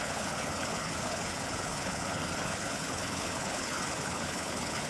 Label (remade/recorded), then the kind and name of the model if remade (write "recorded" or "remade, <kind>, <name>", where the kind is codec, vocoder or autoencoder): remade, codec, HILCodec